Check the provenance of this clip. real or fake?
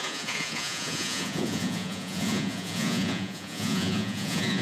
fake